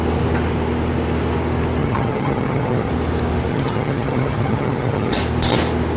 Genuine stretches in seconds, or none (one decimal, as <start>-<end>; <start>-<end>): 0.0-1.8; 2.9-3.5; 5.2-6.0